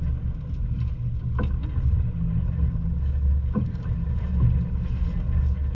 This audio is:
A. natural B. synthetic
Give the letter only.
A